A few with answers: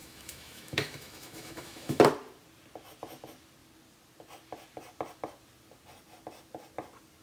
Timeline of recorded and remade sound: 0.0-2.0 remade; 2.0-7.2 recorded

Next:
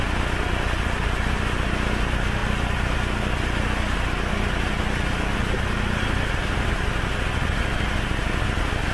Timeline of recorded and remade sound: 0.0-8.9 recorded

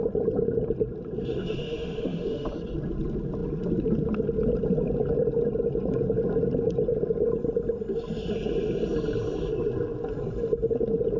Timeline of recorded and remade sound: 0.0-1.3 recorded; 1.3-2.5 remade; 2.5-11.2 recorded

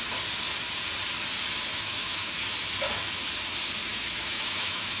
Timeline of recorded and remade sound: 0.0-1.7 recorded; 1.7-2.3 remade; 2.3-3.9 recorded; 3.9-5.0 remade

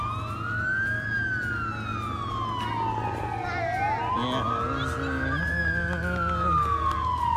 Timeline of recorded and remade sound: 0.0-7.4 recorded